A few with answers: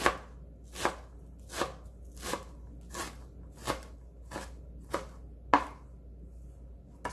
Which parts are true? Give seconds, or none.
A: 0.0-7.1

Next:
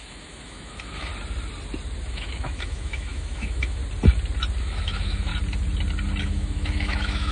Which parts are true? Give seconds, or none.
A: 1.1-2.1; 3.8-4.6; 5.3-6.2

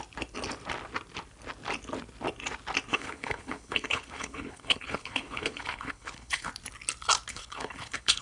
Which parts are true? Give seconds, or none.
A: 0.0-2.9; 6.5-7.3

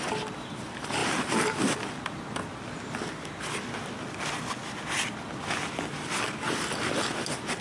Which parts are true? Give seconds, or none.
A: 0.0-7.6

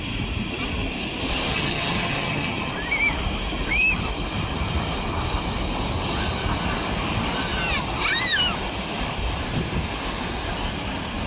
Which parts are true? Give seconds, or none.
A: 0.0-1.5; 2.7-11.3

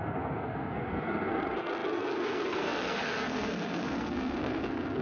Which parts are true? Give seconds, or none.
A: none